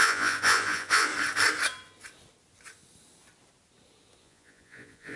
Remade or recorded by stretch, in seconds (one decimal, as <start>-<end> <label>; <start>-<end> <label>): 0.0-1.1 remade; 1.1-4.2 recorded; 4.2-5.2 remade